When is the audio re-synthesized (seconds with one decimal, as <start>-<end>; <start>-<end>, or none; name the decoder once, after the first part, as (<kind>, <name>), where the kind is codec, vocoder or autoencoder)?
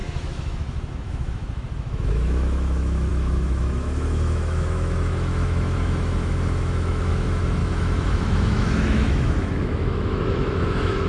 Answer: 0.0-11.1 (autoencoder, DAC-VAE)